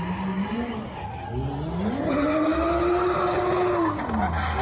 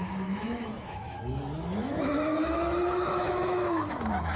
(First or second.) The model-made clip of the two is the second